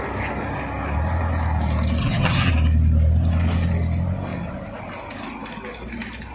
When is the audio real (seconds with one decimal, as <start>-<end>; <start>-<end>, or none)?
0.0-2.0; 2.5-6.3